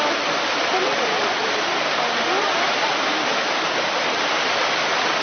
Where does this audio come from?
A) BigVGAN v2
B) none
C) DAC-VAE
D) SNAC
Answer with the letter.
B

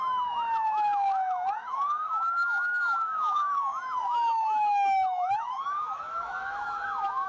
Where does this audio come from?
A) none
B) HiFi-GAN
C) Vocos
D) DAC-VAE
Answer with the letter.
D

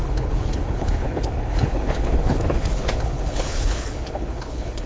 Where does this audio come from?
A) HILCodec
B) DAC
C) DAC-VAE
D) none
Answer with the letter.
A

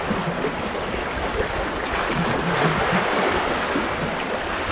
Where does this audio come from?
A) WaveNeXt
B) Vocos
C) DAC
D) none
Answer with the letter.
D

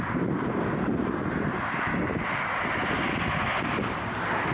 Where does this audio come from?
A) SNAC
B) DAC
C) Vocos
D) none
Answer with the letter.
D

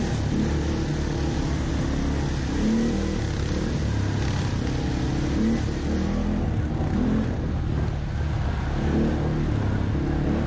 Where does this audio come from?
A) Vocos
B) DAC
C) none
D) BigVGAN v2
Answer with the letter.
C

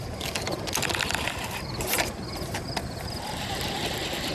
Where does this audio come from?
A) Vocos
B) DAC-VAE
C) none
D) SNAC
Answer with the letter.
C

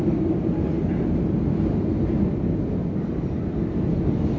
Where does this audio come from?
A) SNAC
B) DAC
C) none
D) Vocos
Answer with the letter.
C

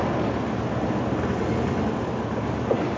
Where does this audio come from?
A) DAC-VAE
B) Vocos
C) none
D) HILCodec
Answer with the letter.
C